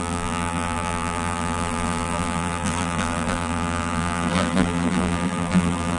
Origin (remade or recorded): remade